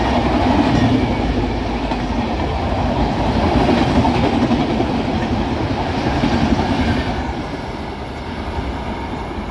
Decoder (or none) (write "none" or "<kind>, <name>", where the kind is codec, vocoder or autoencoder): none